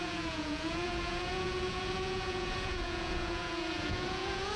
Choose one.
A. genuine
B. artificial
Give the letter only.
B